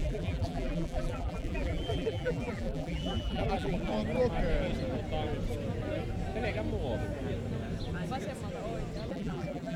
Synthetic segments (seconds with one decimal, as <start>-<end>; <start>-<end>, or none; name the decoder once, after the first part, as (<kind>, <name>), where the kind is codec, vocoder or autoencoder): 0.0-3.9 (vocoder, BigVGAN v2); 9.1-9.8